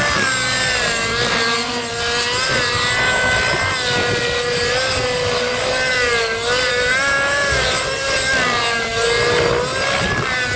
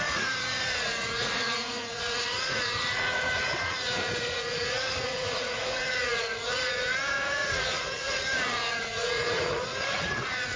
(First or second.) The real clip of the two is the first